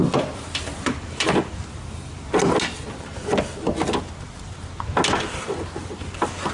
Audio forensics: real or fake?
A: real